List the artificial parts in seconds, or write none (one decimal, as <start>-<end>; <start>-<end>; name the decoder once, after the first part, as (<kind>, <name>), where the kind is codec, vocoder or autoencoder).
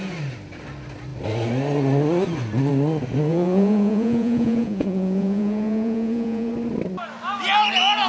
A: 3.3-6.5 (vocoder, Vocos)